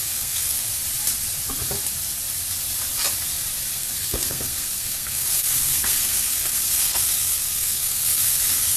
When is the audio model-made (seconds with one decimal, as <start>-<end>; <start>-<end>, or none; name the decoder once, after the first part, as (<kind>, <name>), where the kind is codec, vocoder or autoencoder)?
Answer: 0.0-0.7 (codec, SNAC); 3.7-8.8